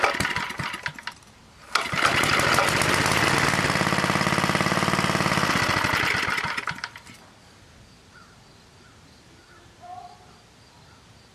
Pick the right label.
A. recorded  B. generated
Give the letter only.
A